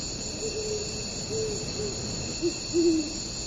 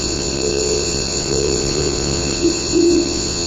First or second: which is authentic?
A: first